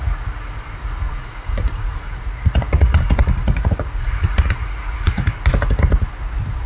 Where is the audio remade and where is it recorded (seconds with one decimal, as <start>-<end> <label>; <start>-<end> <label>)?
0.0-1.2 recorded; 1.2-5.2 remade; 5.2-6.7 recorded

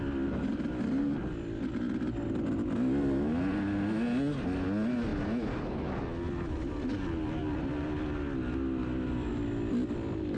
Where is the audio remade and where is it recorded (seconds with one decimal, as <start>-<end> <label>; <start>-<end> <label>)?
0.0-10.4 recorded

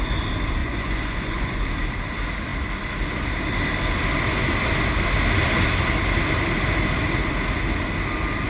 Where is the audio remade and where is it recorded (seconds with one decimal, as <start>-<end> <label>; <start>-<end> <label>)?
0.0-0.6 recorded; 0.6-1.6 remade; 1.6-8.5 recorded

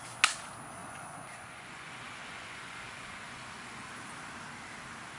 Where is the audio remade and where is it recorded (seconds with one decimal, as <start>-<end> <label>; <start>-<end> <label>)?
0.0-0.8 recorded; 0.8-3.9 remade; 3.9-5.2 recorded

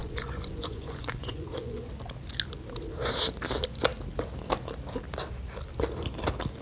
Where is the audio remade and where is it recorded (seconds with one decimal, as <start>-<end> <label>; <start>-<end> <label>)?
0.0-1.9 remade; 1.9-6.6 recorded

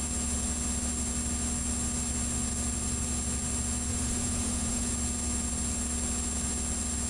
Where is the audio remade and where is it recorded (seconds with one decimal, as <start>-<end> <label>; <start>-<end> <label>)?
0.0-3.9 recorded; 3.9-4.9 remade; 4.9-7.1 recorded